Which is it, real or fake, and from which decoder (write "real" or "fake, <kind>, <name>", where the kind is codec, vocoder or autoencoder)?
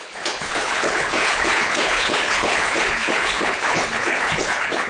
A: fake, codec, HILCodec